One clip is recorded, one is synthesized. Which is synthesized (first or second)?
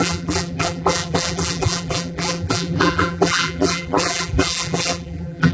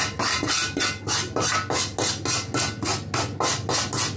first